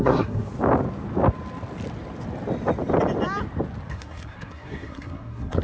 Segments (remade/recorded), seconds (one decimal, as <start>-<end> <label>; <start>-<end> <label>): 0.0-0.5 remade; 0.5-3.9 recorded; 3.9-5.6 remade